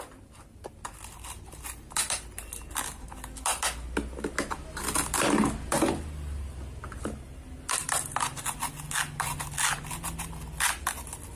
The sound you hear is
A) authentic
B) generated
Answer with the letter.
A